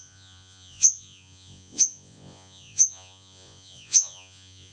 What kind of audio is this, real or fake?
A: fake